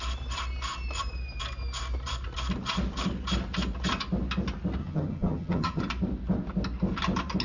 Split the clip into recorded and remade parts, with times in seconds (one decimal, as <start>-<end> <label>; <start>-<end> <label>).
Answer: 0.0-4.8 recorded; 4.8-5.8 remade; 5.8-7.4 recorded